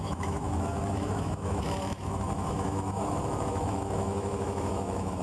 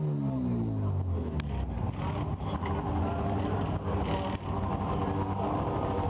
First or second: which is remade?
first